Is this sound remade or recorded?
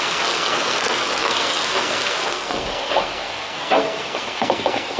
remade